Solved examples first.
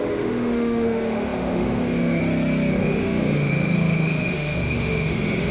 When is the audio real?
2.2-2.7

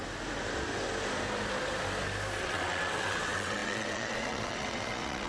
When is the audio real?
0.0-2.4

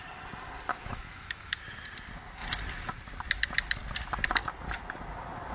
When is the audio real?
0.0-0.7; 1.5-5.5